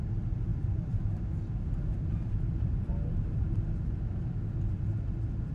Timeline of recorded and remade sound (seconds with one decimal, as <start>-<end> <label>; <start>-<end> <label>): 0.0-0.5 recorded; 0.5-3.6 remade; 3.6-5.5 recorded

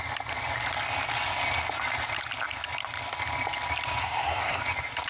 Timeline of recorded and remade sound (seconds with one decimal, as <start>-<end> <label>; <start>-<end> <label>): 0.0-4.0 recorded; 4.0-4.6 remade; 4.6-5.1 recorded

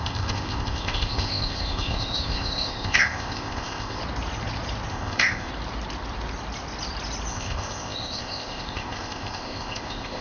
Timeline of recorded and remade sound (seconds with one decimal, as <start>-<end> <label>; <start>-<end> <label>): 0.0-4.0 remade; 4.0-4.9 recorded; 4.9-5.5 remade; 5.5-7.3 recorded; 7.3-10.2 remade

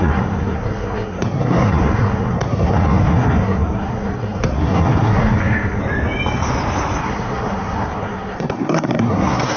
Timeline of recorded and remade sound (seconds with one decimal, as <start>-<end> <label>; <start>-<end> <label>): 0.0-5.8 remade; 5.8-7.0 recorded; 7.0-9.6 remade

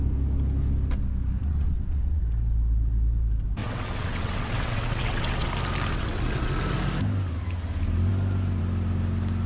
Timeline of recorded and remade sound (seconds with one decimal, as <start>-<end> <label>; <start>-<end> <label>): 0.0-1.4 recorded; 1.4-2.2 remade; 2.2-3.6 recorded; 3.6-5.5 remade; 5.5-5.9 recorded; 5.9-6.6 remade; 6.6-9.5 recorded

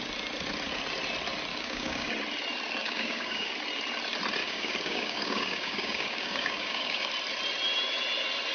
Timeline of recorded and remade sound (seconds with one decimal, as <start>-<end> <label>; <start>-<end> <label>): 0.0-1.5 recorded; 1.5-2.1 remade; 2.1-2.8 recorded; 2.8-3.5 remade; 3.5-4.4 recorded; 4.4-7.1 remade; 7.1-8.5 recorded